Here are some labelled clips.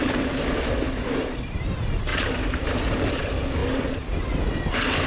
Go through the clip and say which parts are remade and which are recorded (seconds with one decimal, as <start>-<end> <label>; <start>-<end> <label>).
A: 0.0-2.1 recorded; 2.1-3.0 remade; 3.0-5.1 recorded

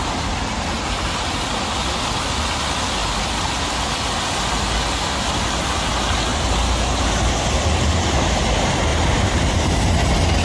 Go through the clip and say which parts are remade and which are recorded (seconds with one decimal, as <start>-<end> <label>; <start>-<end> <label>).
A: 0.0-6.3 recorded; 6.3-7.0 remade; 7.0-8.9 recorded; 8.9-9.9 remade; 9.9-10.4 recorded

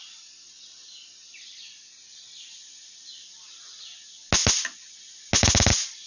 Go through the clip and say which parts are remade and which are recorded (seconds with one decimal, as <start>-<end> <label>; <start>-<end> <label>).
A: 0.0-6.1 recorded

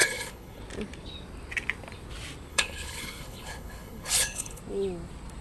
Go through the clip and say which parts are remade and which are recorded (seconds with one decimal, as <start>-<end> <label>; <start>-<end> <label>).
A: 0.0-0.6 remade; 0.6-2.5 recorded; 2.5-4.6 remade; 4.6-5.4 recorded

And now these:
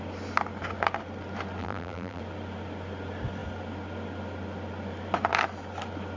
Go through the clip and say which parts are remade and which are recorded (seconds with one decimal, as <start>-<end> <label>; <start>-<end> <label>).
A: 0.0-1.6 recorded; 1.6-2.2 remade; 2.2-6.2 recorded

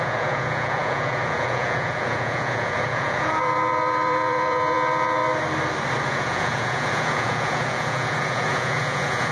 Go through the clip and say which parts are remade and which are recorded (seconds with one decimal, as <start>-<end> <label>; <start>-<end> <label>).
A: 0.0-5.2 remade; 5.2-6.0 recorded; 6.0-9.3 remade